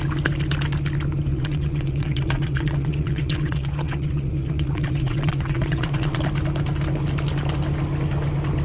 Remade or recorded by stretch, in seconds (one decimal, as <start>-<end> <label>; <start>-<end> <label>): 0.0-1.3 recorded; 1.3-6.2 remade; 6.2-8.6 recorded